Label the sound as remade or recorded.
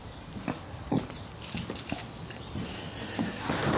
remade